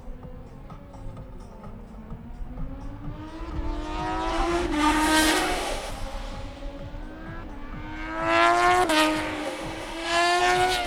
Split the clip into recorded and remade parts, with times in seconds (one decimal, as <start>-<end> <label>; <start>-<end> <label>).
0.0-4.3 recorded; 4.3-5.9 remade; 5.9-9.4 recorded; 9.4-10.4 remade; 10.4-10.9 recorded